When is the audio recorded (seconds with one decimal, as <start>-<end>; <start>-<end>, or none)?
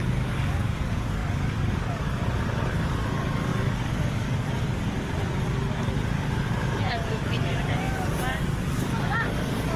none